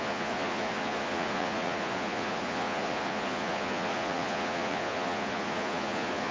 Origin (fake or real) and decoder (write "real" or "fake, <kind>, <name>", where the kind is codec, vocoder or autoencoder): fake, vocoder, Vocos